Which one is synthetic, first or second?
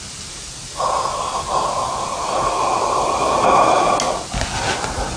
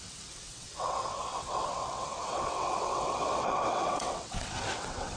second